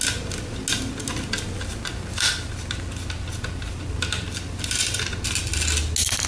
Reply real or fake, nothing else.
real